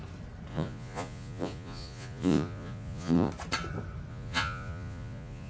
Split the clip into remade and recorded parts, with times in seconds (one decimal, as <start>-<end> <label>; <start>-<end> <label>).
0.0-0.5 recorded; 0.5-3.3 remade; 3.3-4.1 recorded; 4.1-5.5 remade